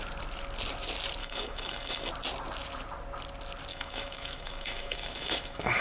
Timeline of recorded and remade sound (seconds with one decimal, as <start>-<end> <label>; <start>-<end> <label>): 0.0-1.2 recorded; 1.2-2.1 remade; 2.1-3.7 recorded; 3.7-5.8 remade